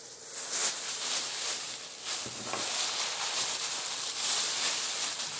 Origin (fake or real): real